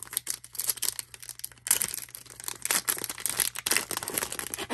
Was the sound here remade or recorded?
recorded